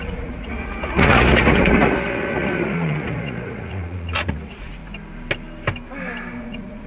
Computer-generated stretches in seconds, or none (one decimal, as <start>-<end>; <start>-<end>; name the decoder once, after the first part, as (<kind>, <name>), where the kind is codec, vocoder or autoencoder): 0.0-4.8 (vocoder, Vocos); 6.4-6.9